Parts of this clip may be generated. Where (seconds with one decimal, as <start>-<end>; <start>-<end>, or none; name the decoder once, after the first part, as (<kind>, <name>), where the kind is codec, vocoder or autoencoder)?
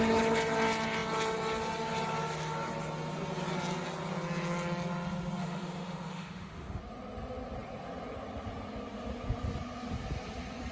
5.4-6.8 (autoencoder, DAC-VAE)